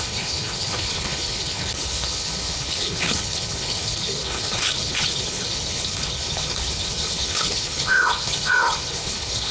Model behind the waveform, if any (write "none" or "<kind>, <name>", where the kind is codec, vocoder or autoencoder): codec, HILCodec